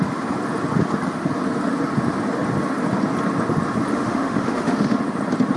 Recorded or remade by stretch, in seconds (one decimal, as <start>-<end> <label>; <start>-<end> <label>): 0.0-3.9 recorded; 3.9-5.0 remade; 5.0-5.6 recorded